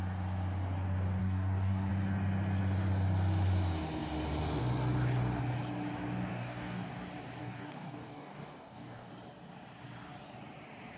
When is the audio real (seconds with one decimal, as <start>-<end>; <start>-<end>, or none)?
0.0-1.2; 1.9-6.3; 6.9-7.4; 9.1-11.0